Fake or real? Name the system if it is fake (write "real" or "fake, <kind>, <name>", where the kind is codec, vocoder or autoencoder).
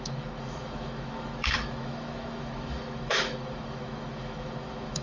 fake, autoencoder, DAC-VAE